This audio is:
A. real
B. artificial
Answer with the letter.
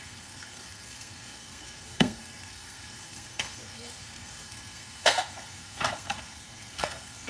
B